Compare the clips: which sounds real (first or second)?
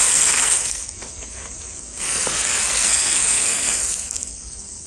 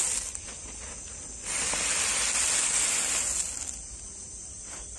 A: second